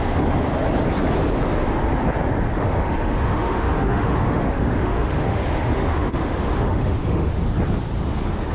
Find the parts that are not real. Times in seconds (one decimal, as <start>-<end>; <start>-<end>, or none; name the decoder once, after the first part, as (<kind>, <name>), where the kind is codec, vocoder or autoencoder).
2.6-7.4 (autoencoder, DAC-VAE)